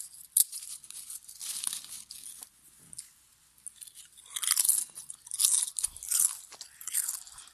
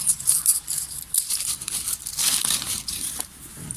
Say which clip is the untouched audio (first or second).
first